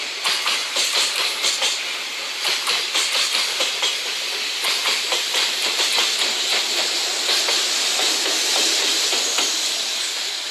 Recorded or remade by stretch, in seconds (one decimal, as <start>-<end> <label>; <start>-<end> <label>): 0.0-0.6 recorded; 0.6-1.5 remade; 1.5-4.8 recorded; 4.8-5.9 remade; 5.9-10.5 recorded